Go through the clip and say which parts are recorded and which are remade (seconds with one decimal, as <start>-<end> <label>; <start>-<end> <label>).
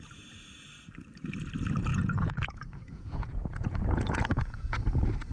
0.0-1.9 recorded; 1.9-4.8 remade; 4.8-5.3 recorded